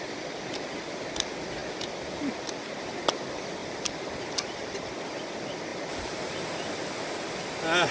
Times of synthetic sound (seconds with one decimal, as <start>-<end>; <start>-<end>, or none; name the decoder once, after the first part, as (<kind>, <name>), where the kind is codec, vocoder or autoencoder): 3.6-4.3 (vocoder, BigVGAN v2); 5.7-7.0